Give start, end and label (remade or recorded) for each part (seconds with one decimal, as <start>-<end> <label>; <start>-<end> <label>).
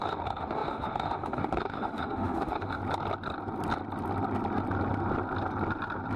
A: 0.0-2.8 remade; 2.8-6.2 recorded